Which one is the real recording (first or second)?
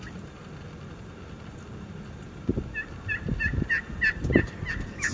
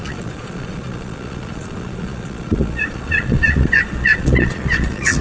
first